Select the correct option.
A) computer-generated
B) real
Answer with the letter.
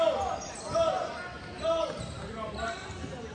B